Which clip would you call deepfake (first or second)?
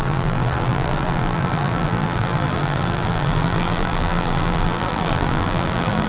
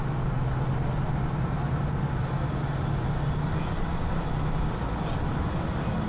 first